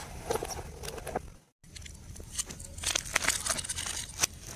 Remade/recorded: recorded